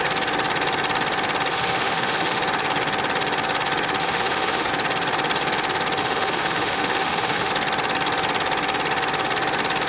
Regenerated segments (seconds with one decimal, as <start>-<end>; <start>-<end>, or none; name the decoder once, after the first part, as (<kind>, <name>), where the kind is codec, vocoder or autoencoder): 1.5-2.4 (autoencoder, DAC-VAE); 4.0-4.7; 6.0-7.5